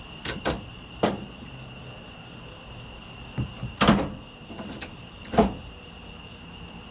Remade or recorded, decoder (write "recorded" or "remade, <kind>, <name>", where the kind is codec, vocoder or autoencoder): remade, vocoder, BigVGAN v2